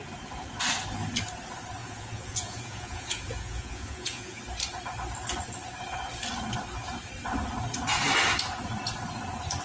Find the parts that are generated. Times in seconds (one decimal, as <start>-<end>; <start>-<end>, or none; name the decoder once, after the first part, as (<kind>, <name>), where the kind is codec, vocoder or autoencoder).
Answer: 1.8-4.4 (vocoder, Vocos)